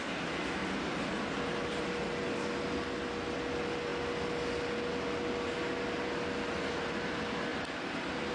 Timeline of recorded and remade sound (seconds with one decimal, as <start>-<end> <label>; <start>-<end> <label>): 0.0-0.6 recorded; 0.6-1.3 remade; 1.3-7.5 recorded; 7.5-8.3 remade